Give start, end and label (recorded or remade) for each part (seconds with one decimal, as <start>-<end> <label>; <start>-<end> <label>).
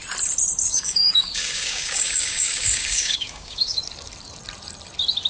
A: 0.0-0.6 recorded; 0.6-3.8 remade; 3.8-5.3 recorded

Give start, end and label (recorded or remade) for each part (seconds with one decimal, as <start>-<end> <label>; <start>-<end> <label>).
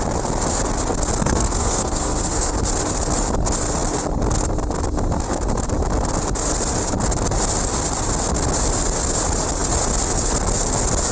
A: 0.0-1.2 recorded; 1.2-2.6 remade; 2.6-11.1 recorded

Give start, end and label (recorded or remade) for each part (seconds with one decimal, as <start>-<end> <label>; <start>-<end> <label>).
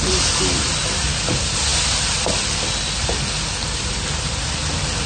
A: 0.0-5.1 recorded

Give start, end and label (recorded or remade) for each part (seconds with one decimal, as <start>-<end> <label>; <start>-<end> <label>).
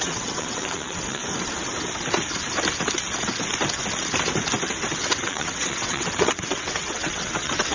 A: 0.0-1.2 remade; 1.2-4.9 recorded; 4.9-7.7 remade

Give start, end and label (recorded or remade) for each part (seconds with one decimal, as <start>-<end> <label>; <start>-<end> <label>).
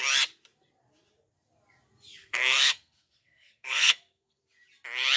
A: 0.0-2.2 recorded; 2.2-4.4 remade; 4.4-5.2 recorded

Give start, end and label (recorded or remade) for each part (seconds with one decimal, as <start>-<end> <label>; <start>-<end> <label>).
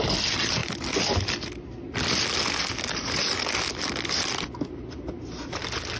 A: 0.0-6.0 recorded